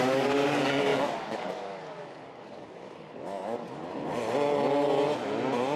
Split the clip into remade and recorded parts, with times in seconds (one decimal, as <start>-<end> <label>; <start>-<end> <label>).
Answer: 0.0-3.8 remade; 3.8-5.8 recorded